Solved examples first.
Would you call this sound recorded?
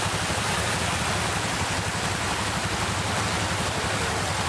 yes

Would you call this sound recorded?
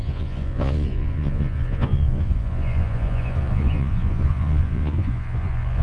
no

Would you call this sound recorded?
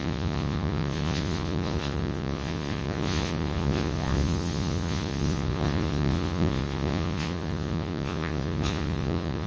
no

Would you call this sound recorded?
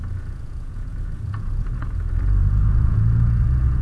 no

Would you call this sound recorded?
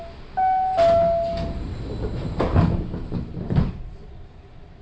yes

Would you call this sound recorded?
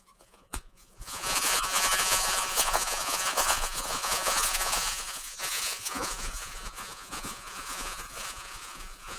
no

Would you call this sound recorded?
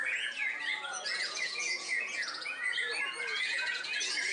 no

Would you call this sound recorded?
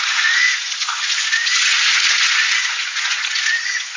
no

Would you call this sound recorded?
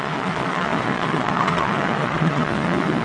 no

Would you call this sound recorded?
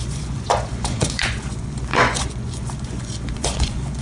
no